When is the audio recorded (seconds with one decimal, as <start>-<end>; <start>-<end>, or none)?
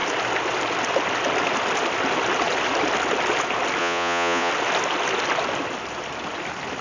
0.0-3.8; 4.5-6.8